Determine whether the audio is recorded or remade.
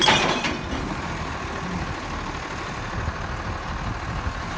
recorded